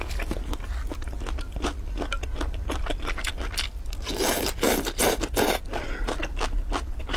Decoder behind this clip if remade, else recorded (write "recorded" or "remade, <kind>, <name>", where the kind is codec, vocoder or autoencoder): recorded